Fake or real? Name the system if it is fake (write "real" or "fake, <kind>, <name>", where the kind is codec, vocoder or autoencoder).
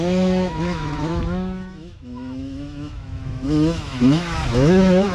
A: fake, autoencoder, DAC-VAE